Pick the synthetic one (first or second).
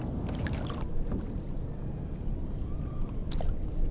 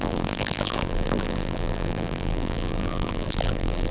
second